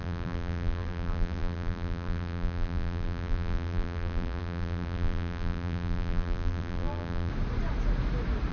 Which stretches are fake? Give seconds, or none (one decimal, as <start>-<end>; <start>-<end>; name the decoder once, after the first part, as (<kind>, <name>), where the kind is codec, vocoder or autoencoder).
0.0-7.3 (vocoder, BigVGAN v2)